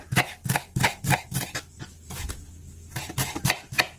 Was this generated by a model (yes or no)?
no